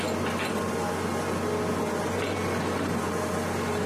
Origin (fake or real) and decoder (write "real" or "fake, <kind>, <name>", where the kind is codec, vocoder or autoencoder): real